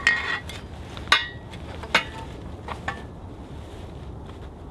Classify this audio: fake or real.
real